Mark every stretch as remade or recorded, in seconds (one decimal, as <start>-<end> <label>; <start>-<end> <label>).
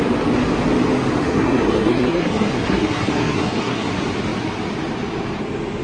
0.0-1.2 recorded; 1.2-3.9 remade; 3.9-5.8 recorded